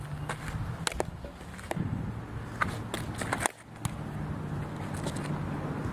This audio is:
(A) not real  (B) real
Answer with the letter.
B